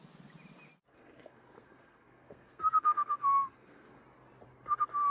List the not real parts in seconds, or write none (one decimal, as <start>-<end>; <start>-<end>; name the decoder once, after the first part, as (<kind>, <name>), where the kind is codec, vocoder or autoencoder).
0.9-4.0 (codec, SNAC)